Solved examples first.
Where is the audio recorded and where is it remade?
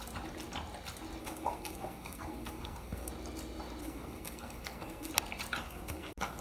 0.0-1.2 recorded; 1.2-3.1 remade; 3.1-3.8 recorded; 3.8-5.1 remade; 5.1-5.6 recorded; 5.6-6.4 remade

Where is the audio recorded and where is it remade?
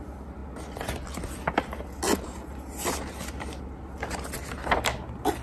0.0-5.4 recorded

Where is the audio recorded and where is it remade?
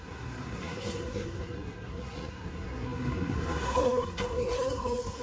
0.0-5.2 remade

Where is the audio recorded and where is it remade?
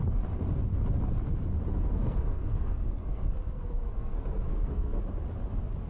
0.0-1.7 recorded; 1.7-5.0 remade; 5.0-5.9 recorded